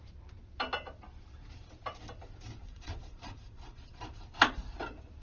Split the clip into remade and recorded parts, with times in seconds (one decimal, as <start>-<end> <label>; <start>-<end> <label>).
0.0-2.6 recorded; 2.6-4.0 remade; 4.0-5.2 recorded